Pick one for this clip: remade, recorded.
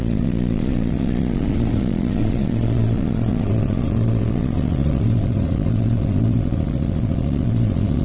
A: remade